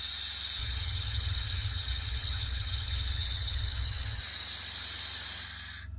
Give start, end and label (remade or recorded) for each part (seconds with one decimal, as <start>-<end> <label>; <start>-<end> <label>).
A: 0.0-0.6 recorded; 0.6-4.2 remade; 4.2-6.0 recorded